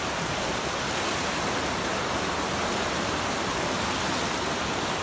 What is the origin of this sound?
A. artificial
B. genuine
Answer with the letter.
B